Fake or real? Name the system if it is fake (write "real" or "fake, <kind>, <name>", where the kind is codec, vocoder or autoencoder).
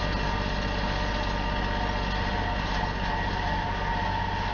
real